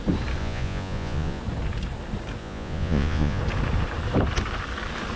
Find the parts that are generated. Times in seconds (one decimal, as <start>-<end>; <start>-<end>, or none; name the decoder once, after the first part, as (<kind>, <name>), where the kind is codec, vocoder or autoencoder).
0.4-1.4 (vocoder, Vocos); 2.4-3.4